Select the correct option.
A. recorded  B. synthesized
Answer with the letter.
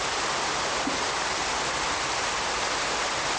B